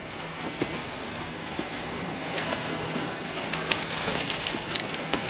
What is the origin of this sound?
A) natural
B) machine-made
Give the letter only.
B